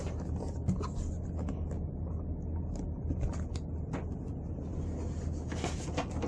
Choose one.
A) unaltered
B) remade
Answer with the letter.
A